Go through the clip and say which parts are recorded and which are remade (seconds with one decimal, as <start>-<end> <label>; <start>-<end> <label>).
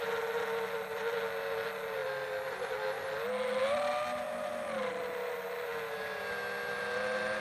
0.0-7.4 recorded